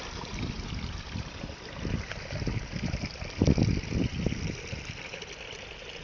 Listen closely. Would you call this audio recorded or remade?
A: recorded